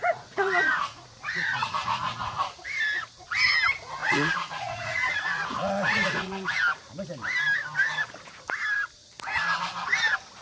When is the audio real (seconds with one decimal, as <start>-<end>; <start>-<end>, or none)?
2.4-4.0; 6.6-10.4